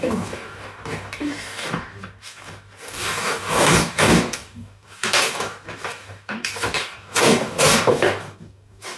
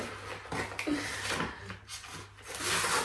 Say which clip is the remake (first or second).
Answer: first